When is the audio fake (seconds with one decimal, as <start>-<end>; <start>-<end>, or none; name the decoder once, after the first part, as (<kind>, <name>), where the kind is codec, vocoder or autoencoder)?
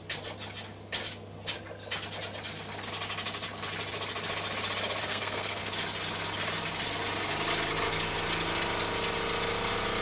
5.0-5.7 (codec, SNAC)